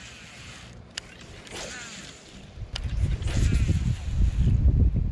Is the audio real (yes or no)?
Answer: yes